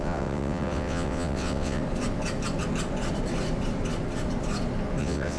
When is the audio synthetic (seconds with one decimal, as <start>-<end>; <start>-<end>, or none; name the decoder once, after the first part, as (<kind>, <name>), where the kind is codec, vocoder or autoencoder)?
0.0-1.8 (vocoder, WaveNeXt); 5.0-5.4